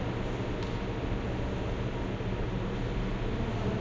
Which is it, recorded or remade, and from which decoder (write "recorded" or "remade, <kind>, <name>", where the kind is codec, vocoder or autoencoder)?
recorded